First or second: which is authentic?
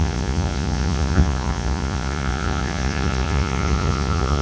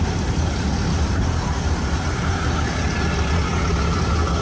second